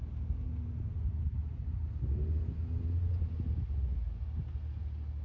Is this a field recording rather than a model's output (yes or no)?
yes